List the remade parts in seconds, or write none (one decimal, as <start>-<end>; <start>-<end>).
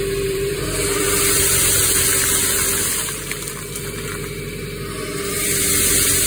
0.0-1.8; 5.3-6.3